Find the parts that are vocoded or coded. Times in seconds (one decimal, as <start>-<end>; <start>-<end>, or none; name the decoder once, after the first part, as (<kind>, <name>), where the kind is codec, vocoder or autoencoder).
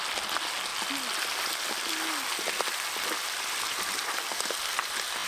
none